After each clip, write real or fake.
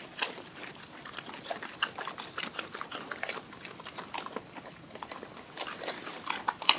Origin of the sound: fake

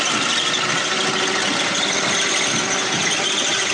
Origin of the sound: real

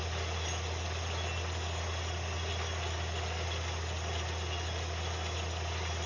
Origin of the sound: real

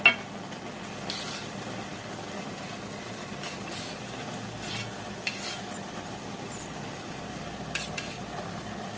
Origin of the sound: real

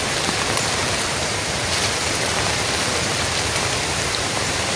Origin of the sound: fake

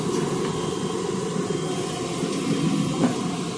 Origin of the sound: real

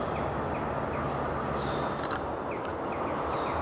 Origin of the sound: real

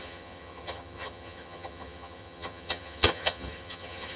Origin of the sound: fake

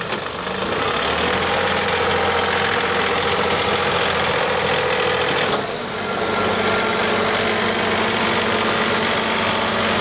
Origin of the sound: real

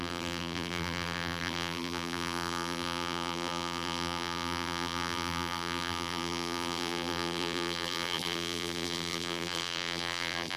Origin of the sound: fake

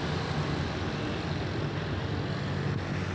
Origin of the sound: real